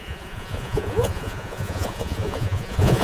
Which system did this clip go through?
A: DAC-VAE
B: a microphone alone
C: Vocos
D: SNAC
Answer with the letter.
C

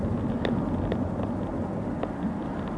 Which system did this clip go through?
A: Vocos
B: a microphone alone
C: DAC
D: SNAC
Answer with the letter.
B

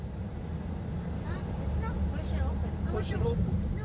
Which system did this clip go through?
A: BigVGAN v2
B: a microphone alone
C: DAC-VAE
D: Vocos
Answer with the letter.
B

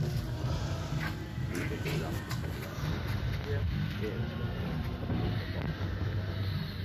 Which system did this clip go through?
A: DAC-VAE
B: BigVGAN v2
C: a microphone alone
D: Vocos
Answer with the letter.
C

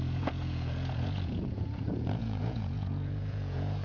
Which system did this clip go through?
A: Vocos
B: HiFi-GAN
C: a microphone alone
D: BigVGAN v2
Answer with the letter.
A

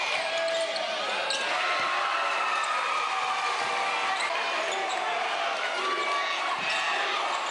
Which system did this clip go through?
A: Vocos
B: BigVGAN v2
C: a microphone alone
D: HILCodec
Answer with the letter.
C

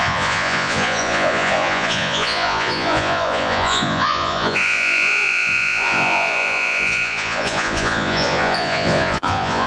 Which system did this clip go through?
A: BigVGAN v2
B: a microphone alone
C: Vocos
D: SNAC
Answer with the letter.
C